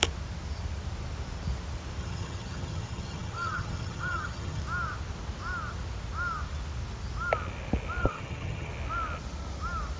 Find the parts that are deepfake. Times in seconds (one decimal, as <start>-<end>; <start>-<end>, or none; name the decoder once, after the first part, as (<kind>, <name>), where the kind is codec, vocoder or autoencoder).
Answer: 2.0-4.6 (vocoder, HiFi-GAN); 8.0-8.7